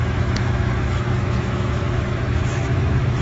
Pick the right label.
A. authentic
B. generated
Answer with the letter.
B